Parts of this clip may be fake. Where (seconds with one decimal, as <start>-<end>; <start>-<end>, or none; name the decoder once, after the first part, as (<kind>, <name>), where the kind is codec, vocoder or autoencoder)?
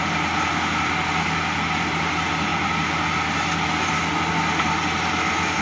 none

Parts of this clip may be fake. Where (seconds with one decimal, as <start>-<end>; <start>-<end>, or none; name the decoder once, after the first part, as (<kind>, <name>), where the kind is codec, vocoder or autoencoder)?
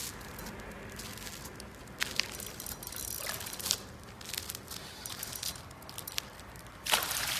4.4-7.4 (vocoder, BigVGAN v2)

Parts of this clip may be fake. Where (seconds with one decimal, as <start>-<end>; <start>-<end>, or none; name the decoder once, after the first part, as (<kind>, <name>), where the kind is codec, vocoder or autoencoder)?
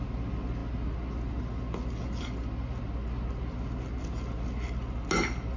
none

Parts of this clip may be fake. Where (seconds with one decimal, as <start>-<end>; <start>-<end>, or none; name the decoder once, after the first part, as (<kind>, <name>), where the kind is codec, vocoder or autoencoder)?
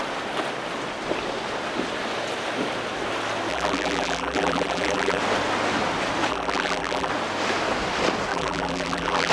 3.5-5.2 (vocoder, BigVGAN v2); 6.3-7.1; 8.3-9.3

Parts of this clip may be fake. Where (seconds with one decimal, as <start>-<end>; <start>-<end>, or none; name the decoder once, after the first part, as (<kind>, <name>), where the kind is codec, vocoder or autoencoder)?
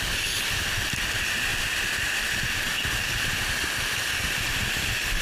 none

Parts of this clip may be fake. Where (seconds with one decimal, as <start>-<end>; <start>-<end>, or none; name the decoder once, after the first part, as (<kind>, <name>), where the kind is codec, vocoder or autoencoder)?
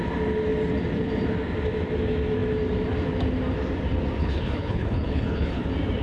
4.2-5.6 (codec, HILCodec)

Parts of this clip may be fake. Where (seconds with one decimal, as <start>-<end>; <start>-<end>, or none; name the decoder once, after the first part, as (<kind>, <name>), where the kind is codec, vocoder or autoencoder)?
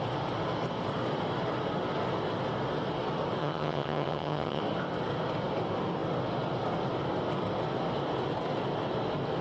3.4-4.6 (vocoder, HiFi-GAN)